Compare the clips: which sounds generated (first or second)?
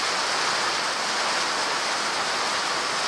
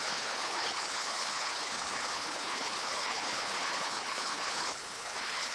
second